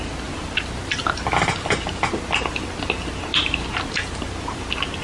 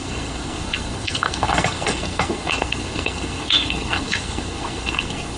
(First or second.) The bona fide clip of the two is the first